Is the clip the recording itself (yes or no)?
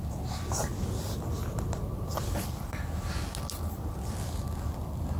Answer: yes